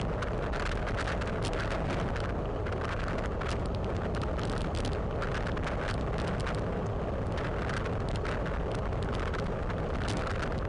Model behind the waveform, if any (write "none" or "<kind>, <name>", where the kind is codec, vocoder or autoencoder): none